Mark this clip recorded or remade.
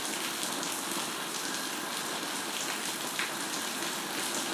recorded